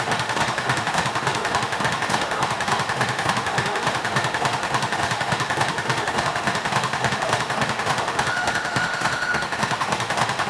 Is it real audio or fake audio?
fake